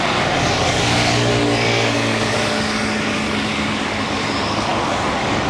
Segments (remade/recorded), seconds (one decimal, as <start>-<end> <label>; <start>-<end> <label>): 0.0-5.5 remade